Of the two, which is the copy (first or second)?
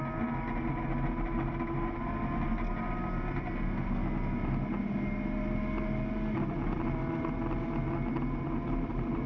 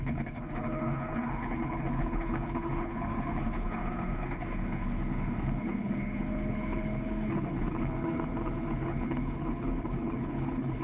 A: second